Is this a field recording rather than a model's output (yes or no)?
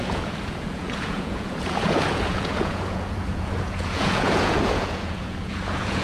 no